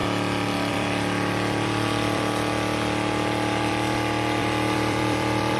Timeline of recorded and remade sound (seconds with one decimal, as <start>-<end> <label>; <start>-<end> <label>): 0.0-0.7 recorded; 0.7-5.6 remade